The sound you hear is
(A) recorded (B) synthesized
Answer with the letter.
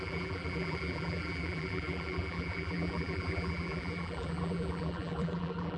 B